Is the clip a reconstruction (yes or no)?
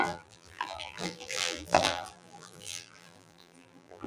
yes